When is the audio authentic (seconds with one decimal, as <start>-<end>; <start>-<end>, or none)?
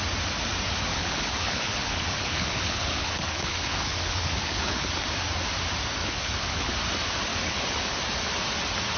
0.0-0.9; 4.9-6.0; 6.7-7.3; 8.0-9.0